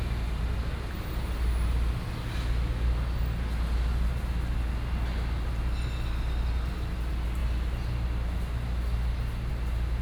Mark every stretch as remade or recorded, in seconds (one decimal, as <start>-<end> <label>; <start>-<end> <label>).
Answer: 0.0-10.0 recorded